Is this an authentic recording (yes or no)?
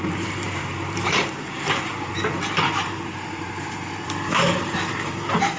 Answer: no